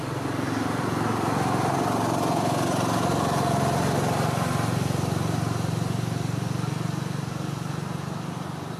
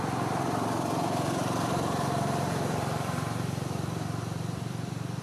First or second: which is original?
first